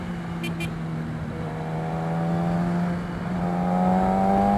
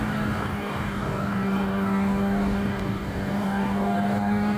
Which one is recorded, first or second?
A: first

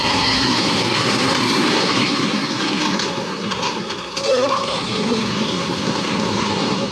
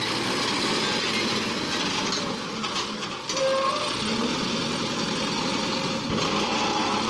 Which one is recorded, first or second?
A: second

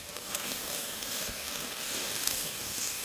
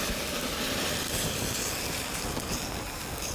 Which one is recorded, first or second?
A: second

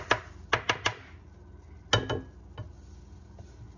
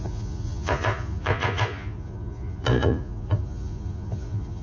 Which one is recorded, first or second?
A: first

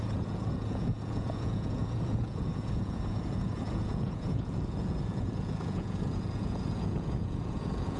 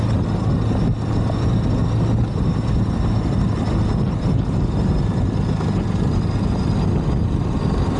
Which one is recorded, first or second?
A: second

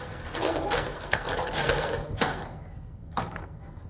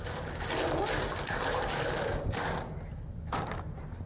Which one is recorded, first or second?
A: second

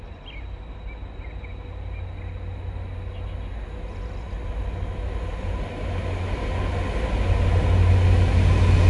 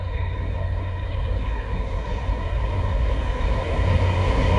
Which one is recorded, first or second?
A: first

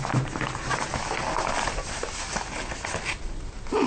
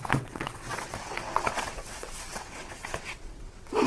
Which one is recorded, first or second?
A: first